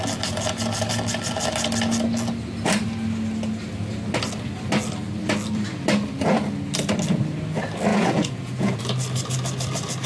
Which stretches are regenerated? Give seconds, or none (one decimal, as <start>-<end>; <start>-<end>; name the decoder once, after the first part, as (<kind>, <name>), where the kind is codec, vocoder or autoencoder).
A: 7.9-8.8 (vocoder, Vocos)